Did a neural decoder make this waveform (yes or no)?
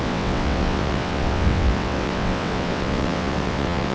yes